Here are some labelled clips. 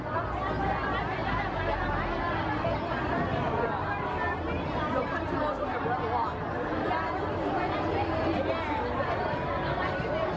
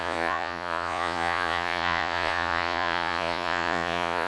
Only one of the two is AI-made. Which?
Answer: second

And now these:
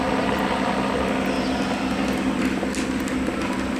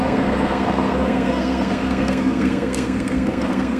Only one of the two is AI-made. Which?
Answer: second